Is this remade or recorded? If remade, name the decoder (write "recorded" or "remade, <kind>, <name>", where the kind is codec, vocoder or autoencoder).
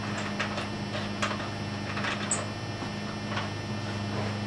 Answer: recorded